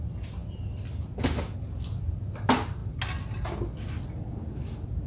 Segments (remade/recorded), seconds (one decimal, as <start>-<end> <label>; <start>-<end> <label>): 0.0-5.1 recorded